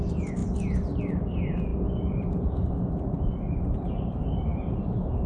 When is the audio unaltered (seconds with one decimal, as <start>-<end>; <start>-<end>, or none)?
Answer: 0.0-5.3